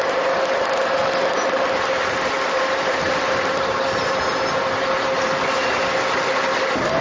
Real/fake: real